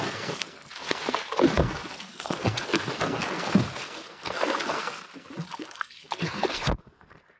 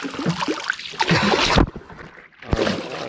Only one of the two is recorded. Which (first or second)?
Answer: second